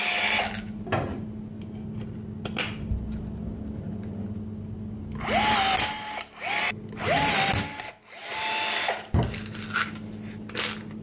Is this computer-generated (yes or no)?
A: no